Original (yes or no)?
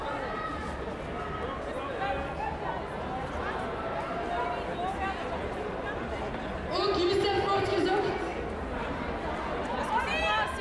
yes